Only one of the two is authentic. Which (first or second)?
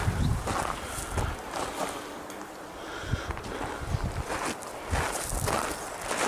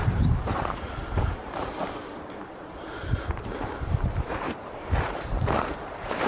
first